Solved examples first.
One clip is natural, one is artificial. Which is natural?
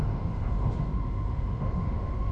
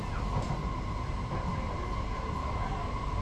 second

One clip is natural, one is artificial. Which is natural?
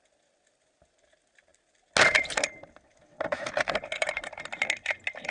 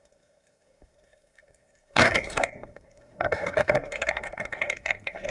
first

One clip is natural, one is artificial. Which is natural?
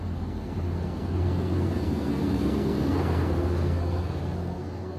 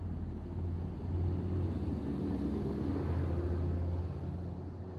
second